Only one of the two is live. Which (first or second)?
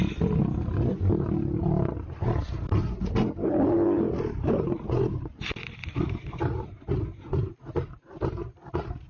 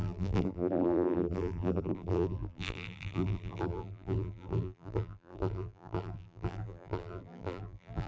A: first